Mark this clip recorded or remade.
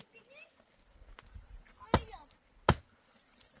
recorded